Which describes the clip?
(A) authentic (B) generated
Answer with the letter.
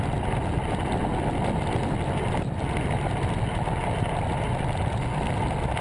A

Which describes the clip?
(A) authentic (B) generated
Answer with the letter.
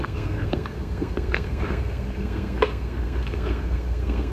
B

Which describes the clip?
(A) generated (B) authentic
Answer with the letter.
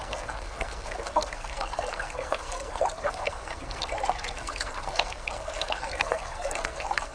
A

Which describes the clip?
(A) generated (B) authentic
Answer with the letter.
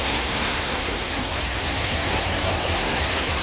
A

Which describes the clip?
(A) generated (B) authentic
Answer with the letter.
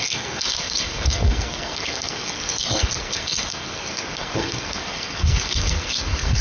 A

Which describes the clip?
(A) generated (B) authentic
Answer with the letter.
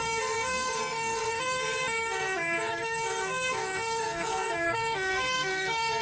A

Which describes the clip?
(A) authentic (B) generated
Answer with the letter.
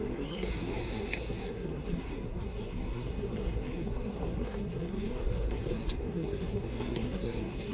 B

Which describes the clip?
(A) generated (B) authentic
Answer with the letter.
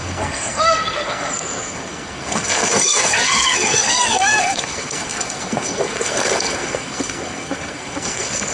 A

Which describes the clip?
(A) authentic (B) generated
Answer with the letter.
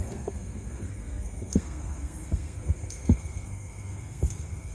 B